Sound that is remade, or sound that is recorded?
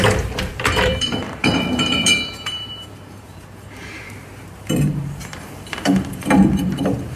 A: remade